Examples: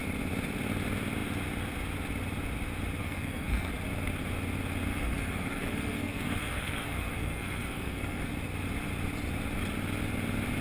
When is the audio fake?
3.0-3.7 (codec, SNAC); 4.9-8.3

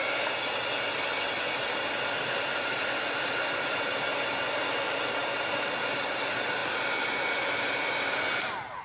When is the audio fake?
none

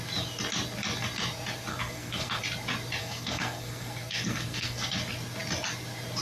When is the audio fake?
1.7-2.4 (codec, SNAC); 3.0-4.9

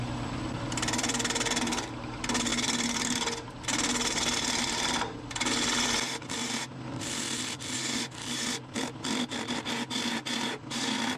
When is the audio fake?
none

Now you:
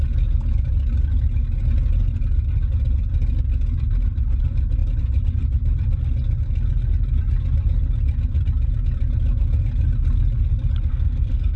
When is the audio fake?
10.9-11.6 (codec, SNAC)

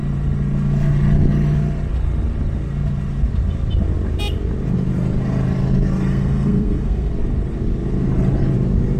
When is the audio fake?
6.1-7.1 (codec, SNAC)

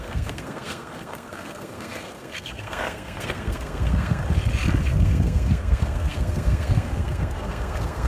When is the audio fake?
0.0-4.2 (codec, SNAC); 4.8-8.1

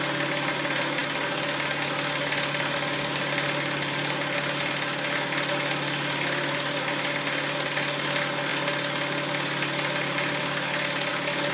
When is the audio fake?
none